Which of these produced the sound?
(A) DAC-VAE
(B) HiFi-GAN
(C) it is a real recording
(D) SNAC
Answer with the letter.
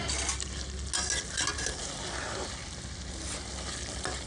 C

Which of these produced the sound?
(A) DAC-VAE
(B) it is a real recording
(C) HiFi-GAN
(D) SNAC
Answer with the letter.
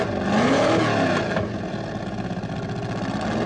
B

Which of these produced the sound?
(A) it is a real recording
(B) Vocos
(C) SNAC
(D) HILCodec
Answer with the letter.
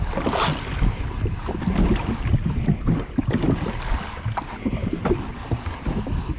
A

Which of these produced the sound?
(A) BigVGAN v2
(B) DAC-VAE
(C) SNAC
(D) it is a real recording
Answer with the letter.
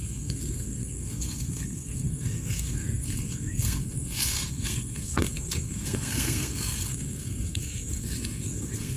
C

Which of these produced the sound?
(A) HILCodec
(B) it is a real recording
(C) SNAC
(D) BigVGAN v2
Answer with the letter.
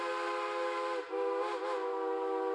B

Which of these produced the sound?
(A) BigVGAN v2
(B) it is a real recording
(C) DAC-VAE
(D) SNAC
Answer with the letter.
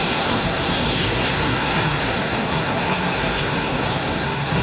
D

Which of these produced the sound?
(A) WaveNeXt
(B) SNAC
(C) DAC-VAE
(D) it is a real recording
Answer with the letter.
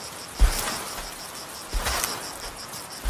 D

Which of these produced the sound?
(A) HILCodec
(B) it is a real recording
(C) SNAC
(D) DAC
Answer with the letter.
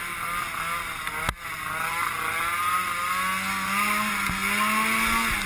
B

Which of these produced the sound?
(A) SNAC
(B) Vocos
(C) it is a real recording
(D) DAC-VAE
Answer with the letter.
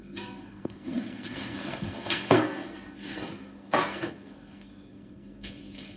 A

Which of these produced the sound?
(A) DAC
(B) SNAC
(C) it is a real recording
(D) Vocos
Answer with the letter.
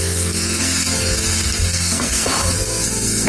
B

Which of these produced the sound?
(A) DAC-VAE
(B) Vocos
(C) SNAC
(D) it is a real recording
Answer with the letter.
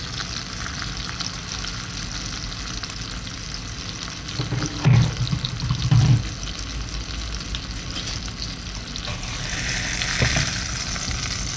D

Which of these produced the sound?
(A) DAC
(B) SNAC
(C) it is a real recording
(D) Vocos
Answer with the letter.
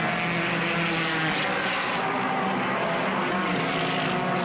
C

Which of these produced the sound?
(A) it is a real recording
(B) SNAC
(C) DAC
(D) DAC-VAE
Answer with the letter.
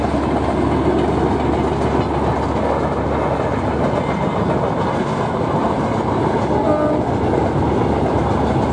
A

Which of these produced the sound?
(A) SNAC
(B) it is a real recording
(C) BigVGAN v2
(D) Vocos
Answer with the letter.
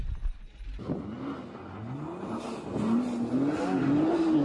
B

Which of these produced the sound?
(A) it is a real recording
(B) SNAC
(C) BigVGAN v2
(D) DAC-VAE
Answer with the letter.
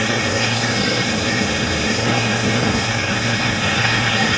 B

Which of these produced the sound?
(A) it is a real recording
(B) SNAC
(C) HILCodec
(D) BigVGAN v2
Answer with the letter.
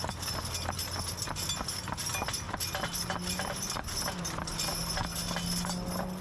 A